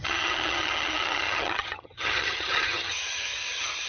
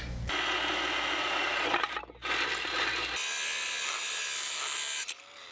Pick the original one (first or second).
second